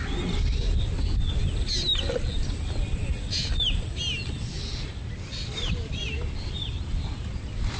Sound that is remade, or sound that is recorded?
recorded